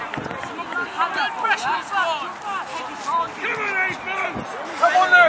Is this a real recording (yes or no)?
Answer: yes